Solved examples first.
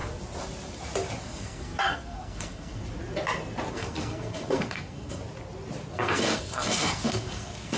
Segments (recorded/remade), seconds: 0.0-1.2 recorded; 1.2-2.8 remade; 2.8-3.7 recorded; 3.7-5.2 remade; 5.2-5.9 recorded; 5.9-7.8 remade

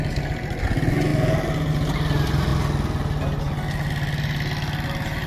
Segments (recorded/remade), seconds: 0.0-5.3 recorded

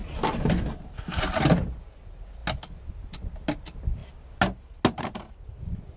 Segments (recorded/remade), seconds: 0.0-6.0 recorded

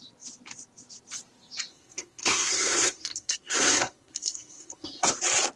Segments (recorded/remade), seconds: 0.0-1.7 recorded; 1.7-5.1 remade; 5.1-5.6 recorded